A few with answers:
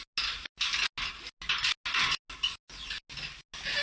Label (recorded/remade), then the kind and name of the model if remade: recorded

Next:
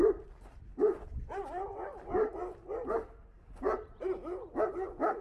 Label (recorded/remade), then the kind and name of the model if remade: recorded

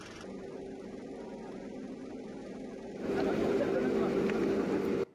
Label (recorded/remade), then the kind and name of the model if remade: recorded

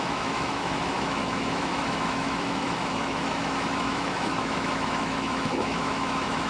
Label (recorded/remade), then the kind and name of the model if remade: remade, autoencoder, DAC-VAE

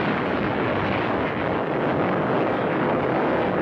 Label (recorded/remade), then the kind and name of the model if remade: remade, codec, DAC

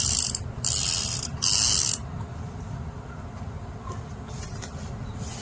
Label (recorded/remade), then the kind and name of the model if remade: recorded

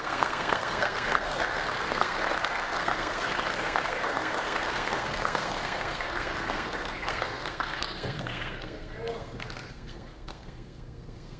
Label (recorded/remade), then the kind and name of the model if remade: remade, codec, SNAC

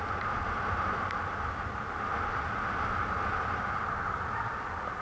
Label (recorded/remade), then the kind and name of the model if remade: recorded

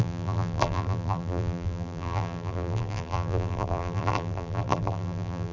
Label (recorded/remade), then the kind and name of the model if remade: remade, vocoder, BigVGAN v2